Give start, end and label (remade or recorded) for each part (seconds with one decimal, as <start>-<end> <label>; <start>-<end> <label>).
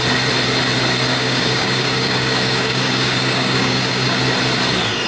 0.0-1.1 recorded; 1.1-4.2 remade; 4.2-5.1 recorded